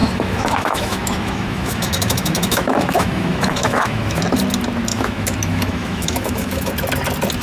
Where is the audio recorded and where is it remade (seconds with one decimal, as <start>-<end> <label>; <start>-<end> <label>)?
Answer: 0.0-4.2 remade; 4.2-4.9 recorded; 4.9-6.7 remade; 6.7-7.4 recorded